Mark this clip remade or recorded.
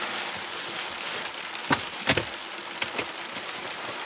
recorded